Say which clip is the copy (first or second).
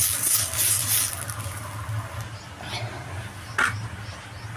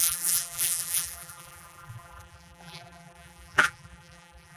second